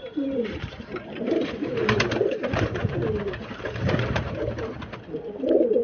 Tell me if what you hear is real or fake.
fake